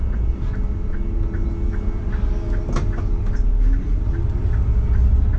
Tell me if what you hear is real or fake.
real